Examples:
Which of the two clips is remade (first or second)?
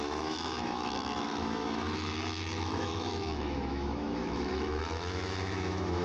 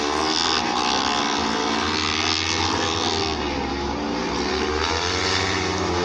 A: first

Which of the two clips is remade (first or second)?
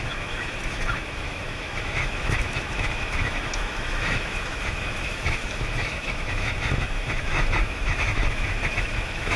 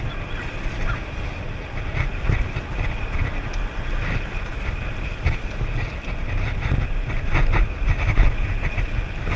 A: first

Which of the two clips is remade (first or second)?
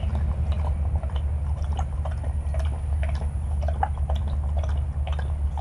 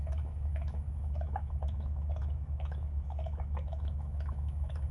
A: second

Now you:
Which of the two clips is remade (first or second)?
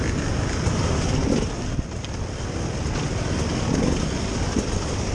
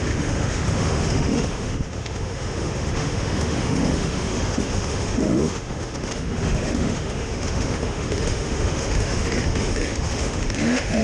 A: second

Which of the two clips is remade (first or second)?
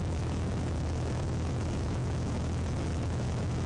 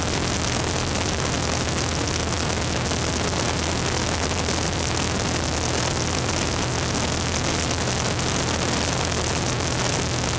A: first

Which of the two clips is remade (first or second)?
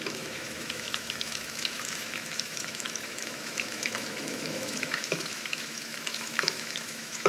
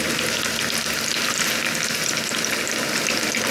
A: first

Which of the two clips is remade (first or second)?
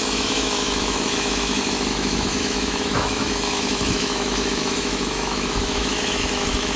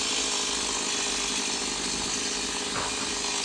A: first